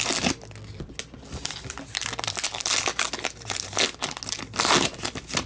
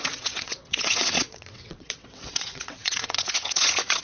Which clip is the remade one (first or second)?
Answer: second